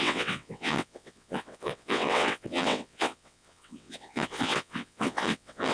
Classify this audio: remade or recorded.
remade